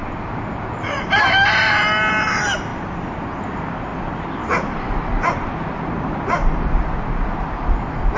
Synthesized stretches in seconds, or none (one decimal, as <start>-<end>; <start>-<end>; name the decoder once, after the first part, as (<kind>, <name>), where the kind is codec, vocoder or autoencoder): 0.0-1.1 (vocoder, BigVGAN v2); 3.9-5.1